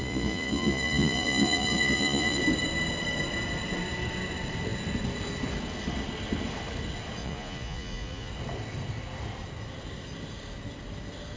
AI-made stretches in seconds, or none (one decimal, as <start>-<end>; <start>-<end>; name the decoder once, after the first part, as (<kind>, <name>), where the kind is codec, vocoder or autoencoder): 0.0-2.4 (vocoder, Vocos); 7.2-8.3